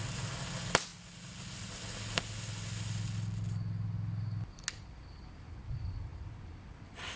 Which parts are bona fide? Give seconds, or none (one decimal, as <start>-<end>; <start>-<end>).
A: 0.0-7.2